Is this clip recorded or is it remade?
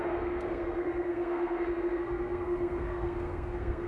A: remade